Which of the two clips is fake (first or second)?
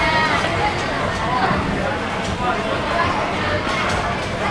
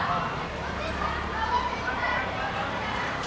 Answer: second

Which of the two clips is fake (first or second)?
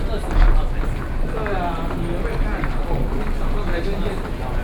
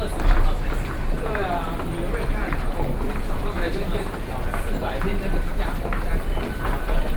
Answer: second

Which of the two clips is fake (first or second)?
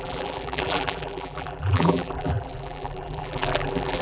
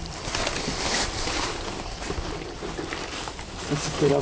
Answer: first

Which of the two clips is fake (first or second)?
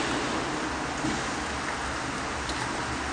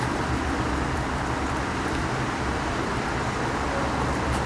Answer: second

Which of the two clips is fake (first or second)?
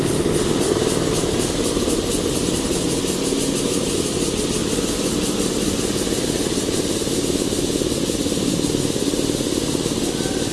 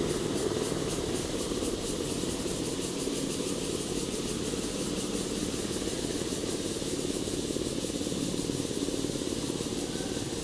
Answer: second